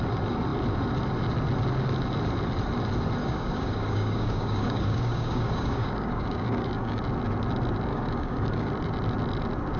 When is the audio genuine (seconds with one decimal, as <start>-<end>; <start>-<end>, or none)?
0.0-3.2; 7.0-7.9; 8.7-9.8